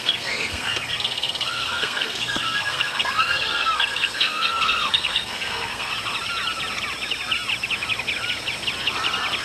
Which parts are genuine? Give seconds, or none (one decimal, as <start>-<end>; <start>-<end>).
5.9-9.4